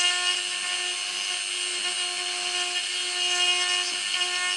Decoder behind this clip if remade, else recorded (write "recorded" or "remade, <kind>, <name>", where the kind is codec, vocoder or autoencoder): recorded